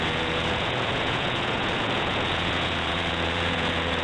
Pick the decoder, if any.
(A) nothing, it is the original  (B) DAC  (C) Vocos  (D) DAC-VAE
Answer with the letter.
C